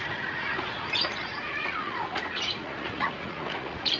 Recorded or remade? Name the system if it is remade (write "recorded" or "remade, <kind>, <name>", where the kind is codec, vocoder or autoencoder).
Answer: remade, vocoder, Vocos